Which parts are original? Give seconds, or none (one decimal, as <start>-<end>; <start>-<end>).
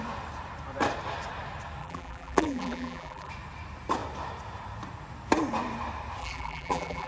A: 0.0-1.8; 3.3-6.2